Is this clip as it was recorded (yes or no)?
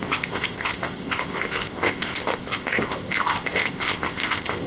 no